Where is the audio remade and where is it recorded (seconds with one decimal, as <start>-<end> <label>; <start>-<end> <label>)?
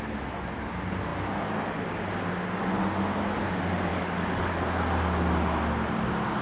0.0-3.9 recorded; 3.9-4.5 remade; 4.5-6.4 recorded